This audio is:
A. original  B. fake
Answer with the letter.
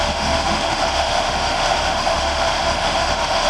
B